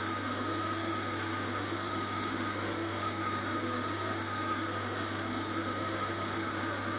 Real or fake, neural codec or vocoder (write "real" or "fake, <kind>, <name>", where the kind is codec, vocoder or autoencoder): fake, autoencoder, DAC-VAE